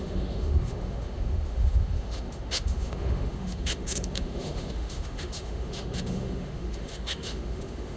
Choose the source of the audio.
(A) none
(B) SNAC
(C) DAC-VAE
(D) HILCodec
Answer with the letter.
C